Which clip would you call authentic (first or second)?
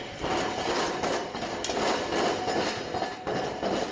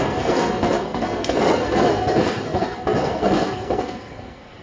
first